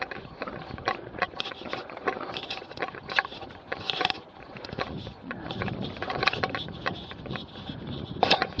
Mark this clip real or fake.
fake